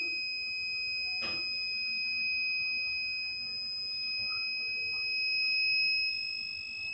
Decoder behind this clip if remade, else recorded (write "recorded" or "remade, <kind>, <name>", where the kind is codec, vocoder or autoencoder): recorded